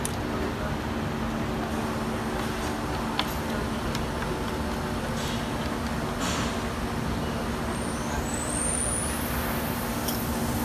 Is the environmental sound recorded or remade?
recorded